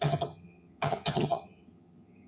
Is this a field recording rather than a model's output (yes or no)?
no